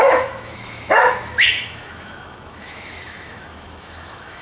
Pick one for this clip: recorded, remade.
remade